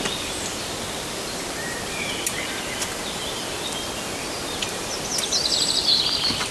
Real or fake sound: fake